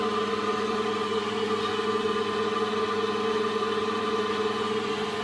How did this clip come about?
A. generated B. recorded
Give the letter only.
B